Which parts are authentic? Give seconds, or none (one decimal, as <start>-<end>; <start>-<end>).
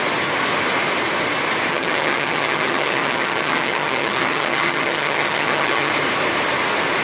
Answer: 0.0-1.7; 5.9-7.0